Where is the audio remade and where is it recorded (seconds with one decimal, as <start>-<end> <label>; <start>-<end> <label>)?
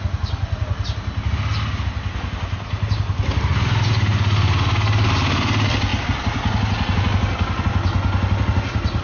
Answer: 0.0-9.0 recorded